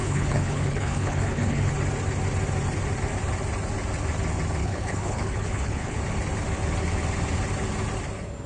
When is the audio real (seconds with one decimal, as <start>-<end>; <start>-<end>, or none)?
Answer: 1.7-4.6; 6.0-8.5